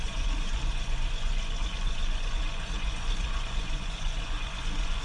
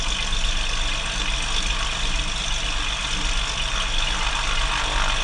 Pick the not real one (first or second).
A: first